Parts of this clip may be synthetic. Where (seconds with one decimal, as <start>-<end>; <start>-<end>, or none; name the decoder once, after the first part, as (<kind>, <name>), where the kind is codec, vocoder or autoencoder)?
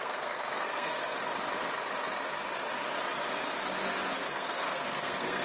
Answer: 0.0-1.2 (codec, SNAC); 4.3-5.4